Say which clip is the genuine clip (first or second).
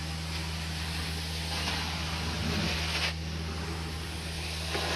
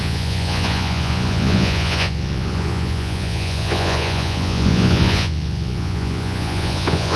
first